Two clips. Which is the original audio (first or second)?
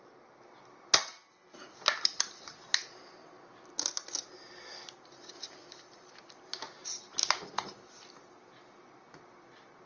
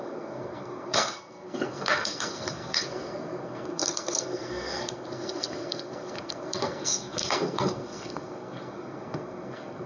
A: first